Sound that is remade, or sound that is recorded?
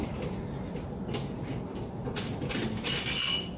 recorded